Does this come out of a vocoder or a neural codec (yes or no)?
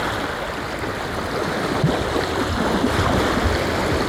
no